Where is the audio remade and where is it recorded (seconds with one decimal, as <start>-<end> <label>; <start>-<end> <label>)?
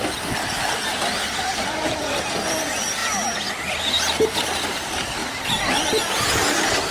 0.0-6.9 recorded